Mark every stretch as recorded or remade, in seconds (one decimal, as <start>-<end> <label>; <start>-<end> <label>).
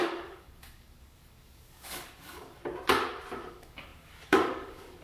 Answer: 0.0-2.6 remade; 2.6-3.5 recorded; 3.5-5.0 remade